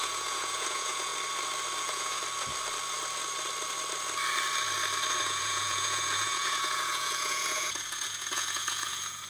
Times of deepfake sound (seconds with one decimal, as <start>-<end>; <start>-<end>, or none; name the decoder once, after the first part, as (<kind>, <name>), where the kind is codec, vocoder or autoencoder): 0.0-1.1 (vocoder, Vocos); 1.8-2.2; 5.2-9.3